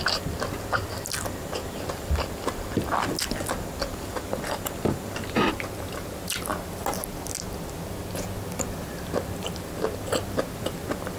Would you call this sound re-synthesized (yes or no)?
no